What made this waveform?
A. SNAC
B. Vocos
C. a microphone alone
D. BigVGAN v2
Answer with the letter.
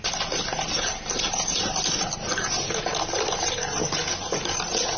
C